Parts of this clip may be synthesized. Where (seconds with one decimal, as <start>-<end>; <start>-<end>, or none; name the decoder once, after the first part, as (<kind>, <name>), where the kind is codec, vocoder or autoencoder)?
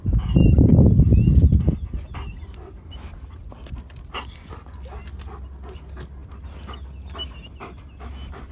none